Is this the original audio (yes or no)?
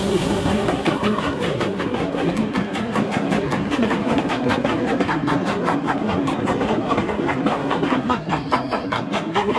no